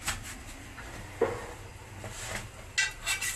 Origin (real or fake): real